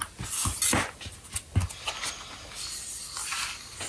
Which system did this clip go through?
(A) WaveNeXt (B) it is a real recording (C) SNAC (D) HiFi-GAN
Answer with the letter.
B